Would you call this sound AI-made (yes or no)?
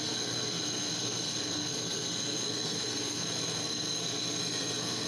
yes